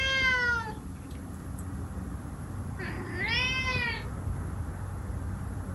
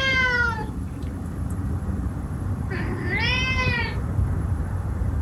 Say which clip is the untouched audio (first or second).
first